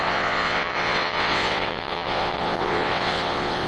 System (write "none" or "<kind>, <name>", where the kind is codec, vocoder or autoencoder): vocoder, WaveNeXt